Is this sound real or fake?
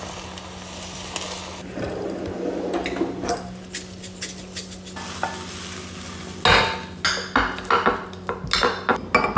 real